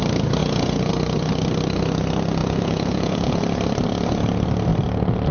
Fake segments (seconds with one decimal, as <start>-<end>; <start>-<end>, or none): 0.4-0.9; 2.4-3.4